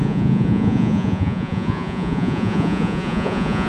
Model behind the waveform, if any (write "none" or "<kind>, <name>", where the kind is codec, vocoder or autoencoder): vocoder, Vocos